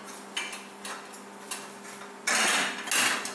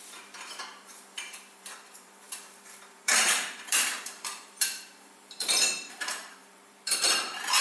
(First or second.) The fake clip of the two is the second